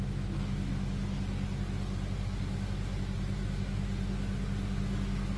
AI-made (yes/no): no